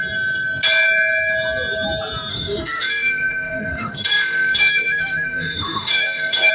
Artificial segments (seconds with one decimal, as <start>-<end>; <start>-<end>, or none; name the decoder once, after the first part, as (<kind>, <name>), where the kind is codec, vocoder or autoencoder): 2.3-6.5 (autoencoder, DAC-VAE)